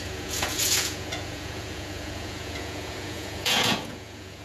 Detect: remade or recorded remade